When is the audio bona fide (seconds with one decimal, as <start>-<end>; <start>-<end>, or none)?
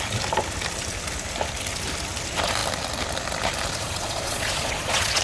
0.0-3.8